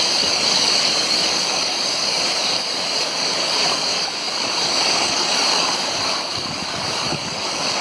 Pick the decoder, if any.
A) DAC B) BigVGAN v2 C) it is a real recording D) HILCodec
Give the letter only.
A